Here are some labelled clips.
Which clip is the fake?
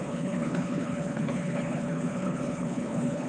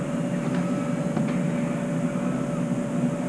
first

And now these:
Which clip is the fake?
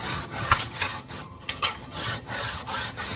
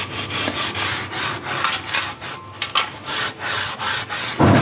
first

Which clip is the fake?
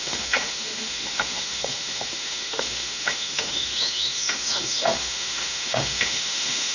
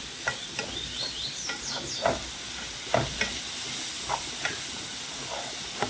first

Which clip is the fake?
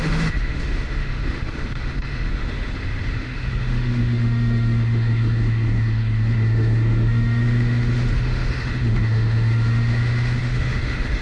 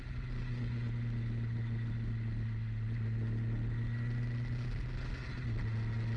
first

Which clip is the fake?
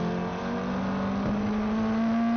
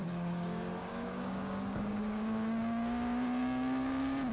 second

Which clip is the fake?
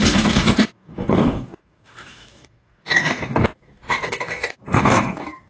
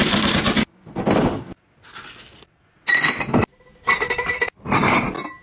first